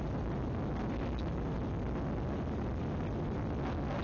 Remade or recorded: recorded